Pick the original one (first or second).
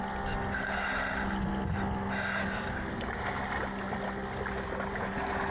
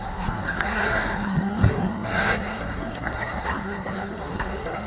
first